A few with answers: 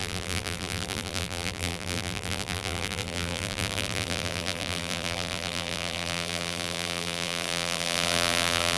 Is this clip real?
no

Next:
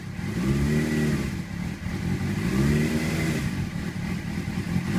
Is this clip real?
yes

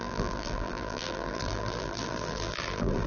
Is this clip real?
no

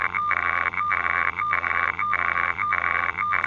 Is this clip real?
no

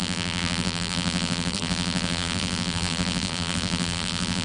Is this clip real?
no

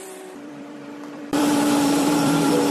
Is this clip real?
no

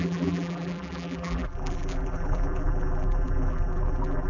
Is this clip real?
no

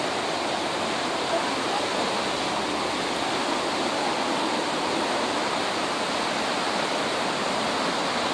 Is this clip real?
yes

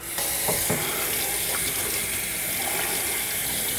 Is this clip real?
yes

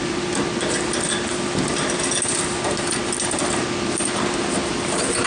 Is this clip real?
yes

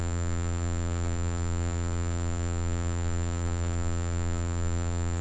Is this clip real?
no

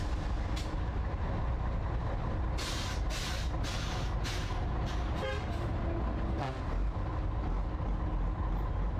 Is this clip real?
yes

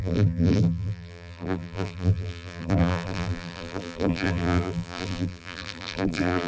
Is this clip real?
no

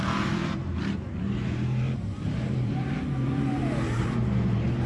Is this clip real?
no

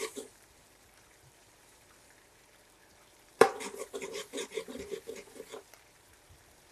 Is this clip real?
no